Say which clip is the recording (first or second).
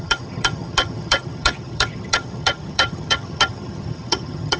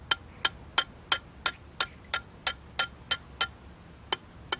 second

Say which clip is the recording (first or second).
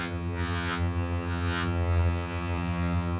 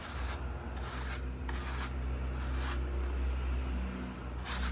second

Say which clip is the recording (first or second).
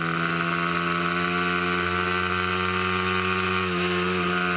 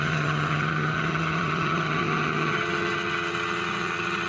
first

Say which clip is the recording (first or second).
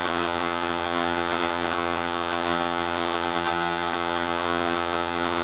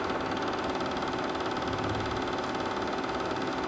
second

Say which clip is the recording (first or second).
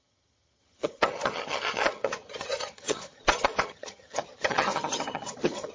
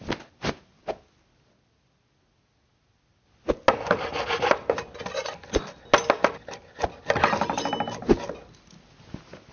second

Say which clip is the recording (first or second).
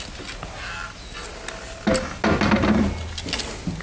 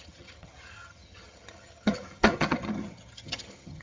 first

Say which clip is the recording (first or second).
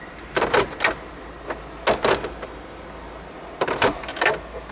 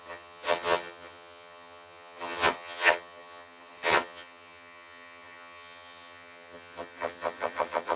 first